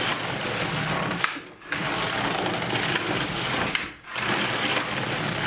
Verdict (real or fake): real